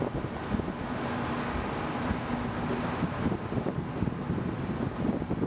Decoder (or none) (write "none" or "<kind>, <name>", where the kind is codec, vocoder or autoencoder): none